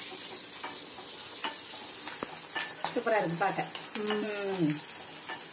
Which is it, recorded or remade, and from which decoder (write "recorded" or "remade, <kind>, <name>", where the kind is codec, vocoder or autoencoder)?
recorded